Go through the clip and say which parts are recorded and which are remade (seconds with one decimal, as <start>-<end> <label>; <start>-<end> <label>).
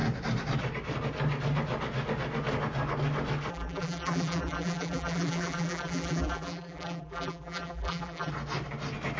0.0-3.5 recorded; 3.5-8.3 remade; 8.3-9.2 recorded